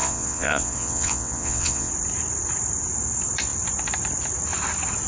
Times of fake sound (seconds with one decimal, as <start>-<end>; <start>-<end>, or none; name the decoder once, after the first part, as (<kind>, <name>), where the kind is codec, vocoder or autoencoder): 0.0-1.9 (vocoder, WaveNeXt)